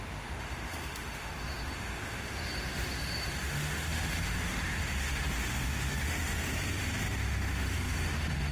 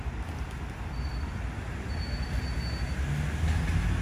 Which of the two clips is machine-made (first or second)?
first